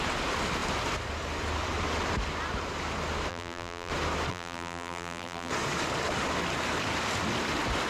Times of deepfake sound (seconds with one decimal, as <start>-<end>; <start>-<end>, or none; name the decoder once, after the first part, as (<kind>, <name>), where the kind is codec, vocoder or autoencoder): 3.3-3.9 (vocoder, BigVGAN v2); 4.3-5.5